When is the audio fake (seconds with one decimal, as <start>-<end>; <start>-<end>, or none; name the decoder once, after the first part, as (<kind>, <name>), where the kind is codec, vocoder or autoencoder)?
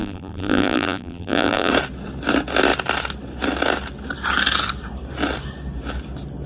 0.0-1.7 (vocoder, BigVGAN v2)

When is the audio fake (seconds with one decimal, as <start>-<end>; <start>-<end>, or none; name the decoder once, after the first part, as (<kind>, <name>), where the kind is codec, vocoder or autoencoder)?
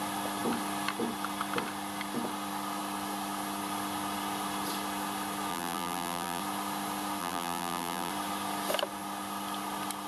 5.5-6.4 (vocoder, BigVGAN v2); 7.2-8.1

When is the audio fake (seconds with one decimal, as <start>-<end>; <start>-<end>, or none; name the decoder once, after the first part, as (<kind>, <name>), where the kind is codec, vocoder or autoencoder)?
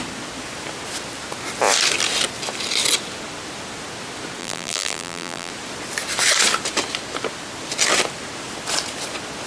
4.4-5.5 (vocoder, BigVGAN v2)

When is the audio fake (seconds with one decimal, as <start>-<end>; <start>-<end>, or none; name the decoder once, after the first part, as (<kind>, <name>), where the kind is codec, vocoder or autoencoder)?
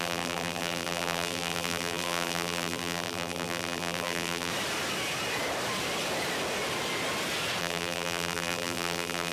0.0-4.5 (vocoder, BigVGAN v2); 7.6-9.3